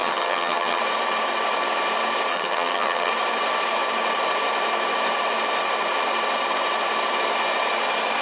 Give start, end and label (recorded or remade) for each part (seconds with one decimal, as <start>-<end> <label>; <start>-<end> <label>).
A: 0.0-0.8 remade; 0.8-2.3 recorded; 2.3-3.1 remade; 3.1-8.2 recorded